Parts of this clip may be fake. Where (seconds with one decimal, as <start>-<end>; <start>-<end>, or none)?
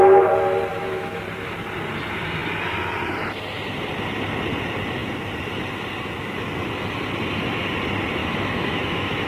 0.7-1.2; 8.2-9.3